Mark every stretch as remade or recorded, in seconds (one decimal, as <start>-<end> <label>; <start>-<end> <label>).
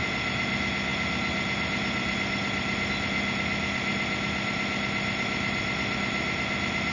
0.0-6.9 recorded